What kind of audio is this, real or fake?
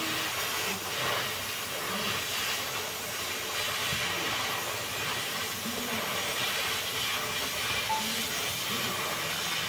real